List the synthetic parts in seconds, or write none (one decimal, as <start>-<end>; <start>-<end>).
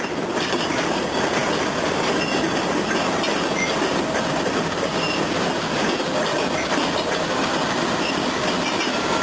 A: none